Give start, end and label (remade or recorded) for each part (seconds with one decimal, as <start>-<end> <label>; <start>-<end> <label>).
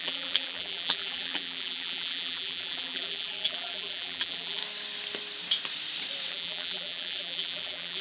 0.0-4.6 remade; 4.6-6.3 recorded; 6.3-8.0 remade